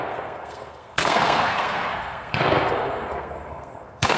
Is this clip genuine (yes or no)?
no